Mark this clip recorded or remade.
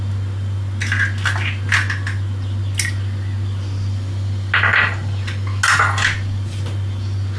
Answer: recorded